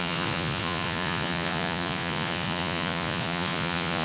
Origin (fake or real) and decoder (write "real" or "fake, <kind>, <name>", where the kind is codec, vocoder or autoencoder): fake, vocoder, Vocos